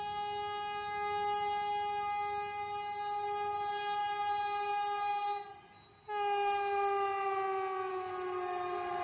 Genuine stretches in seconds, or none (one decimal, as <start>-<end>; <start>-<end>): 0.0-9.0